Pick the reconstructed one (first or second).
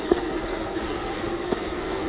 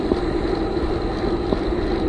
first